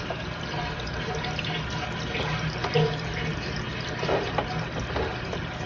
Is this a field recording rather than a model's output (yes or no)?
yes